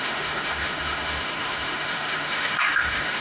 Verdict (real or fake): fake